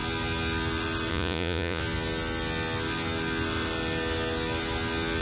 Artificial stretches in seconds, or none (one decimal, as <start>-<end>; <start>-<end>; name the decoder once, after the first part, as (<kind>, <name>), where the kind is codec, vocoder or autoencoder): 1.1-1.8 (vocoder, Vocos)

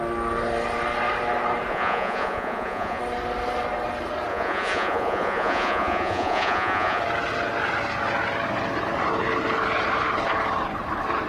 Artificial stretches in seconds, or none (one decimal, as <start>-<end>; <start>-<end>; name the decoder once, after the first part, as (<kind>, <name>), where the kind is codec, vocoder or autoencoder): 1.7-3.0 (vocoder, Vocos); 4.3-7.0

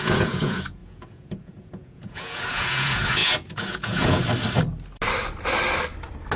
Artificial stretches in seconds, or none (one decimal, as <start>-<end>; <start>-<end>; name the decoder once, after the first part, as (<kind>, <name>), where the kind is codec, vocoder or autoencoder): 0.0-4.2 (vocoder, Vocos)

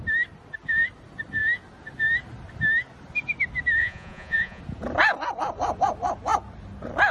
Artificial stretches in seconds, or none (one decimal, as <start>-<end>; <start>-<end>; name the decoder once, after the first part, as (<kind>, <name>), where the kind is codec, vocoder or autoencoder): 3.8-4.6 (vocoder, Vocos)

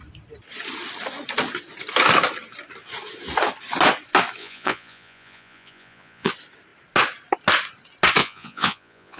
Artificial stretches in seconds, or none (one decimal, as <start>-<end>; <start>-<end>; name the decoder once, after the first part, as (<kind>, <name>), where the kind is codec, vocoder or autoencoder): 4.4-6.3 (vocoder, Vocos); 8.2-9.2

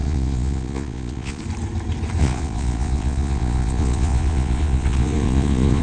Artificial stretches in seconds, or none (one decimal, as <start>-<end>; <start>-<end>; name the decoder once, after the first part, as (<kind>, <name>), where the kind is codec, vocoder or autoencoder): 0.0-1.4 (vocoder, Vocos); 2.2-5.8